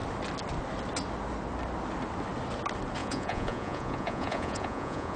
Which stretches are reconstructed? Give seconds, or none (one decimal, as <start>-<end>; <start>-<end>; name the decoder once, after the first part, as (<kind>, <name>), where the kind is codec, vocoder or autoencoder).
3.0-5.2 (vocoder, Vocos)